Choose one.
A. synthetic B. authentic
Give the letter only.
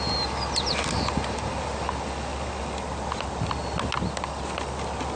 B